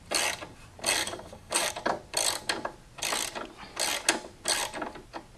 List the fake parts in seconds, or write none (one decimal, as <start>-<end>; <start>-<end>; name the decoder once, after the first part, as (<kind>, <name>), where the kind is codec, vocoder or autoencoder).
1.0-1.7 (codec, DAC)